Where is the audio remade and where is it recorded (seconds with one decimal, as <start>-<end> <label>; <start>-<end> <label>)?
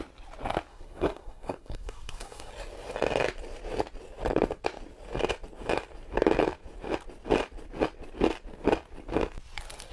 0.0-0.7 recorded; 0.7-2.5 remade; 2.5-9.9 recorded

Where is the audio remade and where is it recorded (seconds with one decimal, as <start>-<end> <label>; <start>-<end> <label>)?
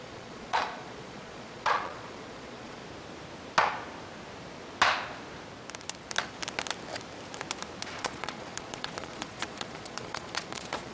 0.0-2.8 remade; 2.8-8.0 recorded; 8.0-10.9 remade